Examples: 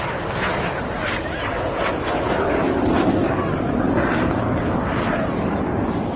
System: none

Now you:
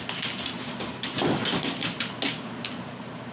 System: none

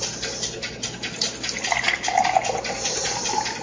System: none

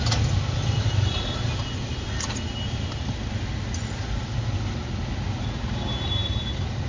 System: none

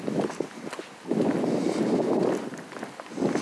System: none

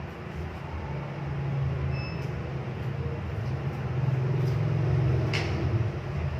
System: none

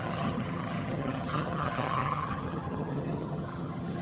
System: vocoder, HiFi-GAN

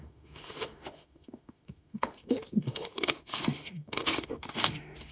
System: autoencoder, DAC-VAE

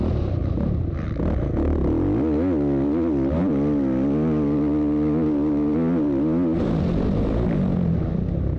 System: none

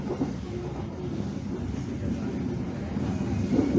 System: none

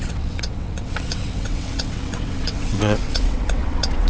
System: vocoder, WaveNeXt